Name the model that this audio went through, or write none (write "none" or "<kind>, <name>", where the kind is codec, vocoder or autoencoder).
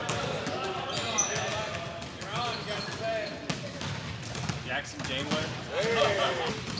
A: none